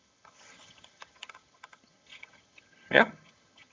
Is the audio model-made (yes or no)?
yes